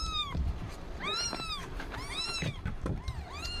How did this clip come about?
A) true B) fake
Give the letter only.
B